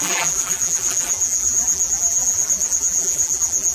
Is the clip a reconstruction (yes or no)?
yes